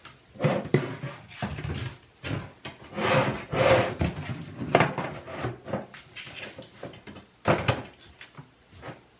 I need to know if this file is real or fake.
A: real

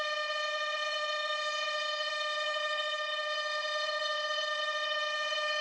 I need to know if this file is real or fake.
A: fake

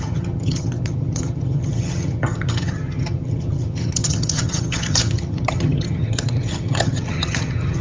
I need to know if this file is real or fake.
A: fake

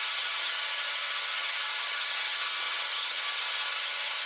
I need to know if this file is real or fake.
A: fake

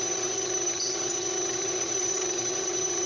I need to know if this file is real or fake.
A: fake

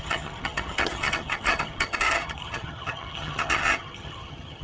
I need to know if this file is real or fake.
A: fake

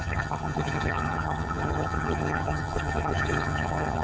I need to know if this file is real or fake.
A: fake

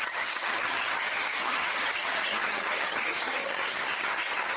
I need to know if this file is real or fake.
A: fake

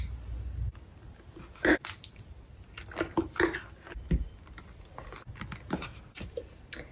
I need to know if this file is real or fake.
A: real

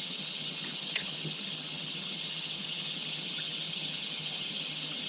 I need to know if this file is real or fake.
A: fake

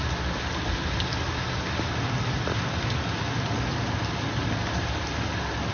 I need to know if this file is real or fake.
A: real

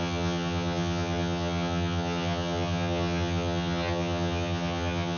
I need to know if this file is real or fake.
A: fake